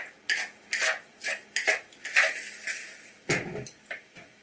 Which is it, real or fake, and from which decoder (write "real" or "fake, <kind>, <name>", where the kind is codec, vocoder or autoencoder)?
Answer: real